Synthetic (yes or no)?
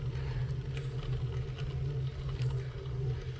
no